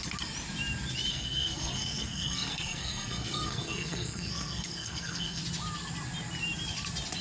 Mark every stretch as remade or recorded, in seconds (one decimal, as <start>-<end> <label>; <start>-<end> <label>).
0.0-1.1 recorded; 1.1-5.4 remade; 5.4-7.2 recorded